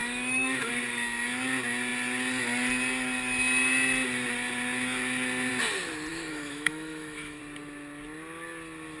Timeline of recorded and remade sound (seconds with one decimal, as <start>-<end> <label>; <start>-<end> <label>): 0.0-0.7 remade; 0.7-6.1 recorded; 6.1-7.4 remade; 7.4-9.0 recorded